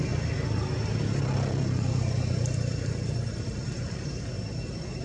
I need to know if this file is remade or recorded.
remade